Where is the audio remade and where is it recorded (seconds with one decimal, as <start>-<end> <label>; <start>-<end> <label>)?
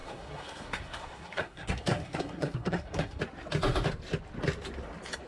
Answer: 0.0-3.2 remade; 3.2-5.3 recorded